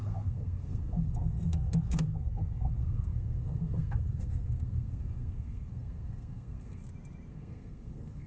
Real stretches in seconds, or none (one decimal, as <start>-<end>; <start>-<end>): 6.8-7.3